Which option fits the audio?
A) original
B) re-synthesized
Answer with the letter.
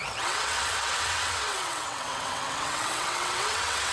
B